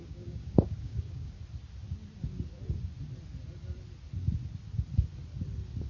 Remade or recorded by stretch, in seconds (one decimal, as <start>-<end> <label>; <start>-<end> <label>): 0.0-1.4 remade; 1.4-5.9 recorded